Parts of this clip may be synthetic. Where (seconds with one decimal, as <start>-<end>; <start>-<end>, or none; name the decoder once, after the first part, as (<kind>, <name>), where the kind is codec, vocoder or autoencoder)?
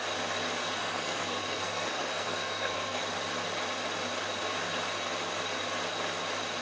0.8-3.0 (codec, SNAC)